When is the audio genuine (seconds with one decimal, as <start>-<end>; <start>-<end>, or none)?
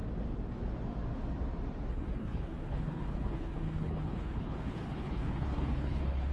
0.0-1.9